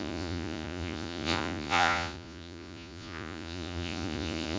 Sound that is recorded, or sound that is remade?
remade